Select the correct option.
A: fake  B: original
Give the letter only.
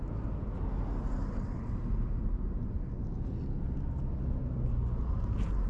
B